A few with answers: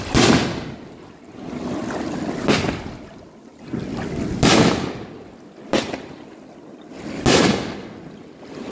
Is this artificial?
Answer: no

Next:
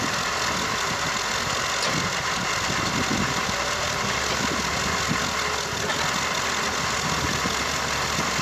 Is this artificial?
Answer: no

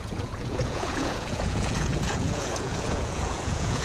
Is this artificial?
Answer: yes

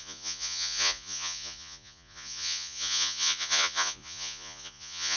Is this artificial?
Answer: yes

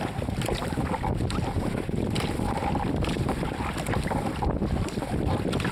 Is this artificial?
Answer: no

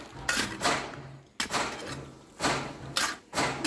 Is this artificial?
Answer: no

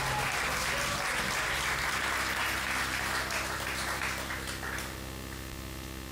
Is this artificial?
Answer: no